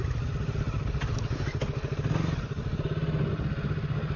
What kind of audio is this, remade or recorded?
recorded